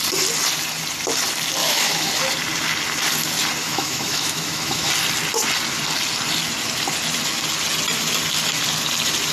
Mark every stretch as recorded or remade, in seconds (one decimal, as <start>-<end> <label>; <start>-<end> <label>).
0.0-1.6 recorded; 1.6-2.1 remade; 2.1-3.6 recorded; 3.6-4.9 remade; 4.9-9.3 recorded